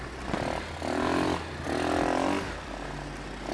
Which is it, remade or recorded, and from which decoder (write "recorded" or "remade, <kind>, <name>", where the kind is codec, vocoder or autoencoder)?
recorded